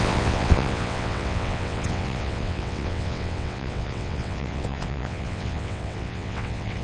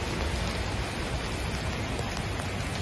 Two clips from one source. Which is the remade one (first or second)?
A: first